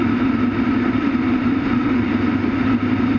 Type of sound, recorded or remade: remade